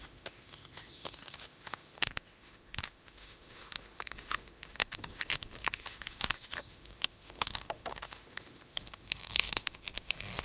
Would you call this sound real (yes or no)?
no